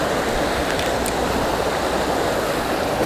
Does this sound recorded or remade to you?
recorded